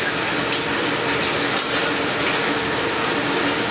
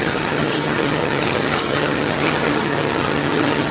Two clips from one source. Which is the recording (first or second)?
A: first